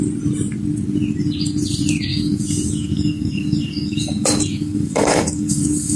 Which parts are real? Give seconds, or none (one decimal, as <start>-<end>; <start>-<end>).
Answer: 0.0-2.1